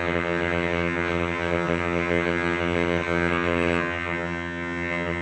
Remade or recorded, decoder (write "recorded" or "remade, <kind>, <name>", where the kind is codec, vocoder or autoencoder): remade, vocoder, HiFi-GAN